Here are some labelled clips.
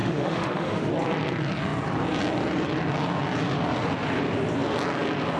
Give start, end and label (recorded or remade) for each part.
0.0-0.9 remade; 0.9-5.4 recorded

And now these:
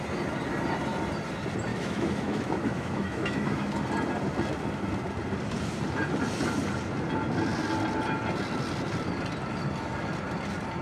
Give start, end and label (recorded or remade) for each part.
0.0-1.7 recorded; 1.7-3.7 remade; 3.7-10.8 recorded

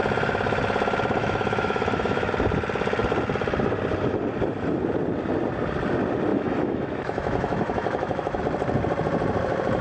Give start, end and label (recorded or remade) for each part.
0.0-1.2 recorded; 1.2-2.3 remade; 2.3-6.3 recorded; 6.3-8.4 remade; 8.4-9.8 recorded

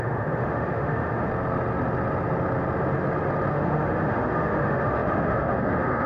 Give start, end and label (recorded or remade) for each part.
0.0-1.3 remade; 1.3-3.5 recorded; 3.5-6.1 remade

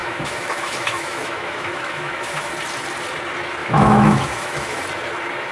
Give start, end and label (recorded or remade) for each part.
0.0-2.5 remade; 2.5-3.6 recorded; 3.6-4.8 remade; 4.8-5.5 recorded

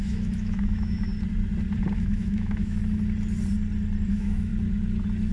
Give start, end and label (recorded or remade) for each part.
0.0-1.1 remade; 1.1-2.0 recorded; 2.0-2.8 remade; 2.8-4.1 recorded; 4.1-4.5 remade; 4.5-5.3 recorded